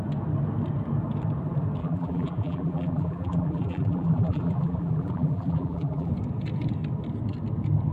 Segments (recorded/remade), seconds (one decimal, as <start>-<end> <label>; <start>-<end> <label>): 0.0-1.8 recorded; 1.8-6.1 remade; 6.1-7.9 recorded